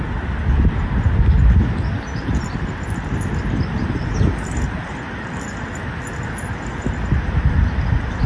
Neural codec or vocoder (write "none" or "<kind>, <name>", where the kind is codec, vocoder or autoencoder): none